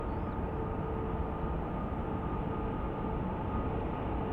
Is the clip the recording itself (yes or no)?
yes